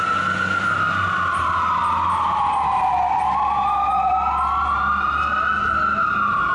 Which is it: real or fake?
real